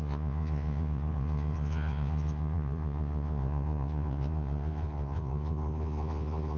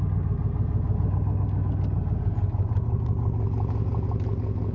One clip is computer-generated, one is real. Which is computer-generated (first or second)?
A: first